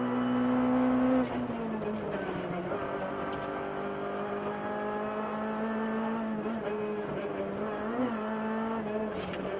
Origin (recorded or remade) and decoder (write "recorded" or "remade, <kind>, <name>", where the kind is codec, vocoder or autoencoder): recorded